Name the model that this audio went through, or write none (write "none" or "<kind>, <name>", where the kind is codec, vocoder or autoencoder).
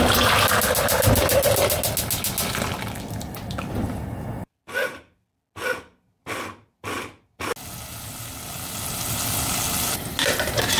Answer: none